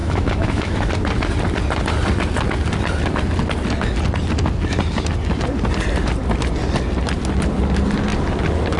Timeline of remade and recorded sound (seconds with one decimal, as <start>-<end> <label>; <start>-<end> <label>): 0.0-0.9 remade; 0.9-8.8 recorded